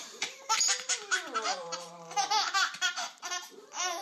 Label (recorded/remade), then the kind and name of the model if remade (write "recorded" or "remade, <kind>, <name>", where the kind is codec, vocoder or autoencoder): remade, vocoder, BigVGAN v2